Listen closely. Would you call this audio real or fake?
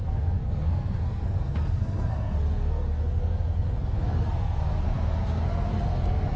fake